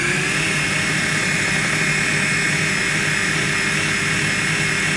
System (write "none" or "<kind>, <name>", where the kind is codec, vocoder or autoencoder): none